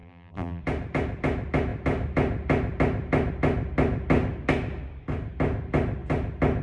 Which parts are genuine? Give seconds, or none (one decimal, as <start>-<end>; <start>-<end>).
0.6-6.6